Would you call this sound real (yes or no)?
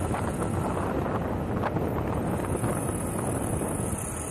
yes